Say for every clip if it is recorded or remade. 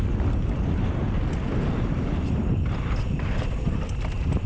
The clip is recorded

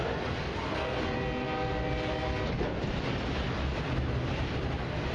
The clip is recorded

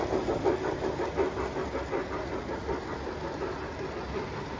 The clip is recorded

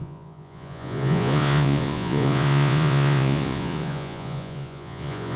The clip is remade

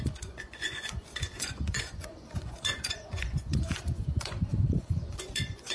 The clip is remade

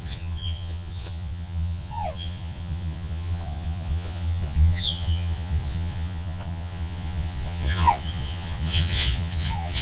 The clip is remade